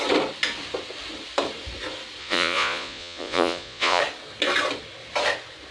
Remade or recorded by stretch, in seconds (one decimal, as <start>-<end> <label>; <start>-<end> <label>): 0.0-2.2 recorded; 2.2-4.0 remade; 4.0-5.7 recorded